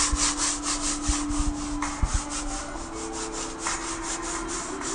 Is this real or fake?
real